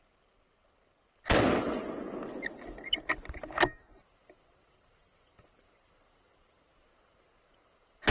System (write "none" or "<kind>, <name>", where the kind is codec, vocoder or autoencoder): none